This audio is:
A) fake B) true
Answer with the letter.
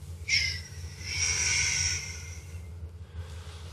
B